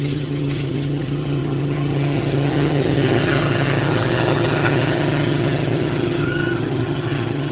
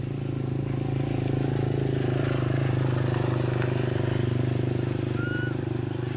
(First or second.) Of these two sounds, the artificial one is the first